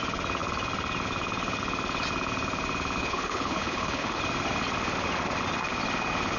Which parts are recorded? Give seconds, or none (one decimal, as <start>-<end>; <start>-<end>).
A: 0.0-3.0; 4.2-6.4